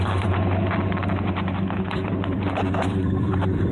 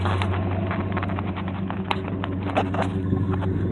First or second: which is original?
second